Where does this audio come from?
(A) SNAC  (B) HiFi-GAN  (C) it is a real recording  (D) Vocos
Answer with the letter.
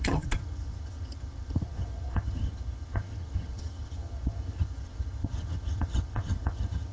B